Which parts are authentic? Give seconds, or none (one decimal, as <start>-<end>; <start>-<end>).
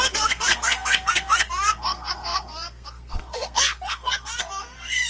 none